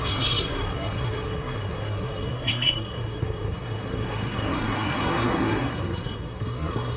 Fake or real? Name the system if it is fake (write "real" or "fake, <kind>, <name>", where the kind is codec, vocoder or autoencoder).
fake, codec, SNAC